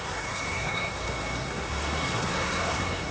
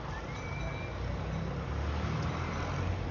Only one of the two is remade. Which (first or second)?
first